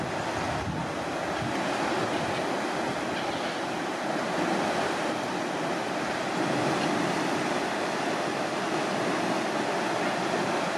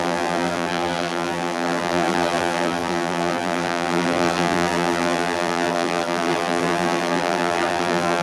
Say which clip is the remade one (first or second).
second